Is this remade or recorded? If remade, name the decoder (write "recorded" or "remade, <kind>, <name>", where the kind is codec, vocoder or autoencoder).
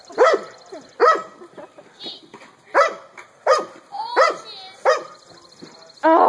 recorded